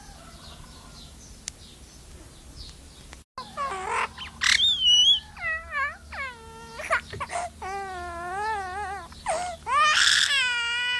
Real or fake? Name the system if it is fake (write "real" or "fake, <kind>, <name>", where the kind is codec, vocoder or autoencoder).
real